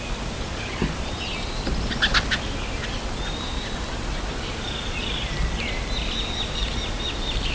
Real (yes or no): yes